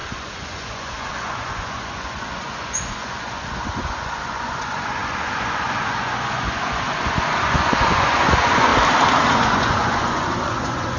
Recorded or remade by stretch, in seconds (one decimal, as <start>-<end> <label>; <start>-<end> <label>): 0.0-8.7 remade; 8.7-9.3 recorded; 9.3-11.0 remade

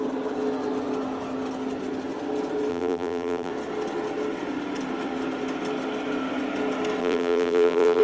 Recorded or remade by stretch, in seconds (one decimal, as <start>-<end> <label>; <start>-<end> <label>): 0.0-2.7 recorded; 2.7-3.5 remade; 3.5-7.0 recorded; 7.0-8.0 remade

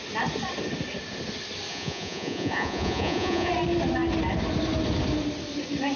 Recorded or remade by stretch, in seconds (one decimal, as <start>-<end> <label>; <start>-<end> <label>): 0.0-1.7 recorded; 1.7-3.5 remade; 3.5-6.0 recorded

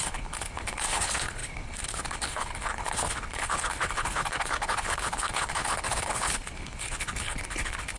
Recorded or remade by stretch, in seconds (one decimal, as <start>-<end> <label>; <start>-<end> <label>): 0.0-8.0 remade

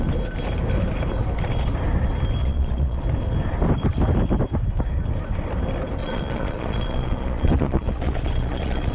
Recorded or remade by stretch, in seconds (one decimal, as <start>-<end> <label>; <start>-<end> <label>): 0.0-2.4 recorded; 2.4-3.0 remade; 3.0-6.0 recorded; 6.0-8.9 remade

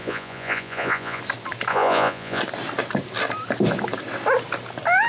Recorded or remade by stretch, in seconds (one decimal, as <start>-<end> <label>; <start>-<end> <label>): 0.0-1.2 remade; 1.2-1.7 recorded; 1.7-2.4 remade; 2.4-5.1 recorded

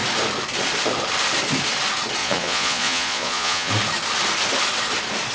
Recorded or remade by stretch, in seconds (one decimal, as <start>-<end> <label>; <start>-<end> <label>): 0.0-2.2 recorded; 2.2-3.7 remade; 3.7-5.3 recorded